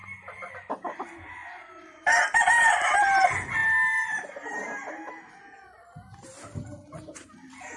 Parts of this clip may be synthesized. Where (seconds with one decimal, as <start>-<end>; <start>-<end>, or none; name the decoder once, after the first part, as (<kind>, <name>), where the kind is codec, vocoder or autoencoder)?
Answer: none